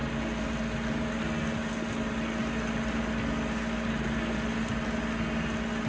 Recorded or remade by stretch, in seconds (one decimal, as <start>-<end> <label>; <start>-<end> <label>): 0.0-5.9 recorded